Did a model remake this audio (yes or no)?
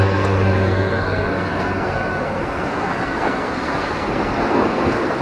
yes